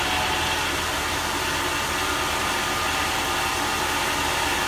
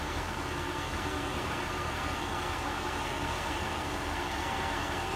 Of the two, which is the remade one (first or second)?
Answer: second